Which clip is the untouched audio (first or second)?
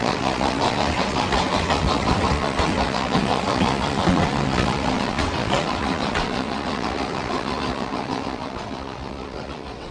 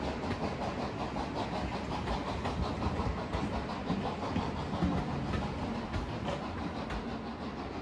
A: second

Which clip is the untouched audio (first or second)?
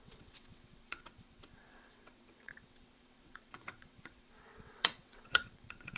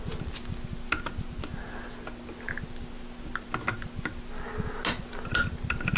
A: second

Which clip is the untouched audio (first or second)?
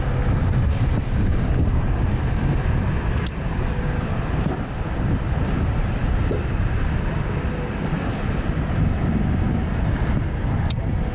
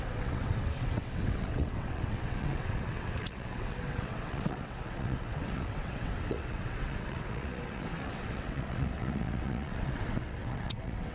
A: first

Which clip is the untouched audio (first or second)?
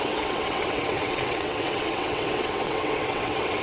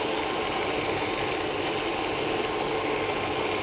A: second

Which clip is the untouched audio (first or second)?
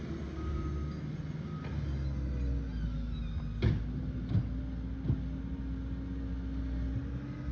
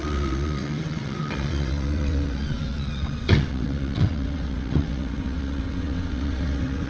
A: first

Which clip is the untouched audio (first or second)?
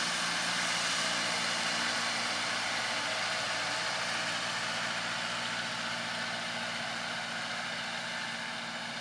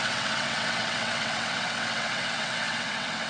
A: first